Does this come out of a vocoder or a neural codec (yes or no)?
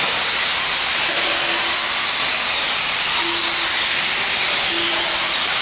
no